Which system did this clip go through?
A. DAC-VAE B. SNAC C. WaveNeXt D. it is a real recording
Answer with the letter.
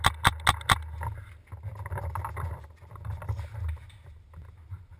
D